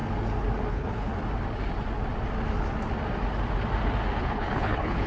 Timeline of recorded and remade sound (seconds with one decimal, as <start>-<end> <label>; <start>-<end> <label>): 0.0-0.7 recorded; 0.7-1.1 remade; 1.1-4.2 recorded; 4.2-5.1 remade